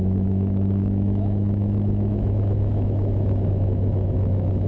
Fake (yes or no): yes